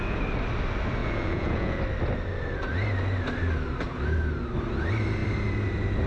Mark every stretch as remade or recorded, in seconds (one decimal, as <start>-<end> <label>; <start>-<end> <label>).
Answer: 0.0-1.0 recorded; 1.0-1.8 remade; 1.8-6.1 recorded